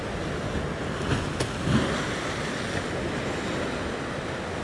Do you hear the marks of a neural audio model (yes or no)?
no